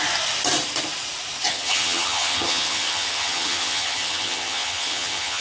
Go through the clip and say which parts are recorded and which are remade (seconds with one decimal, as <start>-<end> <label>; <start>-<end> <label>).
0.0-1.5 recorded; 1.5-5.4 remade